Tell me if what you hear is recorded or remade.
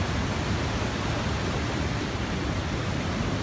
recorded